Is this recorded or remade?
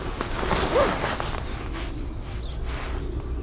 recorded